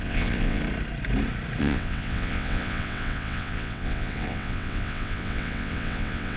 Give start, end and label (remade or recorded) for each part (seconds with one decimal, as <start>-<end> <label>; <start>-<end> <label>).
0.0-0.6 remade; 0.6-1.6 recorded; 1.6-6.4 remade

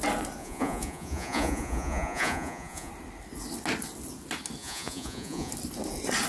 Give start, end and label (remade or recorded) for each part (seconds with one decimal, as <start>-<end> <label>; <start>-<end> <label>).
0.0-0.4 recorded; 0.4-2.9 remade; 2.9-4.6 recorded; 4.6-5.5 remade; 5.5-6.3 recorded

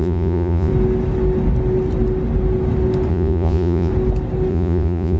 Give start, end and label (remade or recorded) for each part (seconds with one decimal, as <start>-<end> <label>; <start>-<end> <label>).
0.0-0.7 remade; 0.7-3.1 recorded; 3.1-3.9 remade; 3.9-4.5 recorded; 4.5-5.2 remade

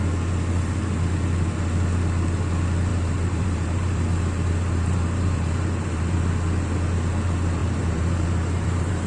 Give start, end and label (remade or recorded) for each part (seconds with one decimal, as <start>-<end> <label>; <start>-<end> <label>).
0.0-2.9 recorded; 2.9-6.2 remade; 6.2-7.6 recorded; 7.6-9.1 remade